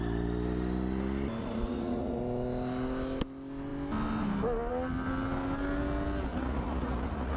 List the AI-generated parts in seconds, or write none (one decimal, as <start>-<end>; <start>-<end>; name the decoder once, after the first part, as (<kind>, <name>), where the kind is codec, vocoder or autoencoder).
1.4-2.2 (vocoder, Vocos); 6.3-7.4